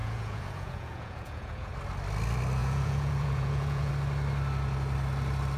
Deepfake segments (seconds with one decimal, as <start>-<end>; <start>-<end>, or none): 0.0-1.7; 2.6-3.9